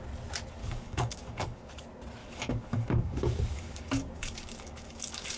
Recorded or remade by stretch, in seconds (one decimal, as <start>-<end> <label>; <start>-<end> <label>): 0.0-0.6 recorded; 0.6-1.7 remade; 1.7-2.2 recorded; 2.2-5.4 remade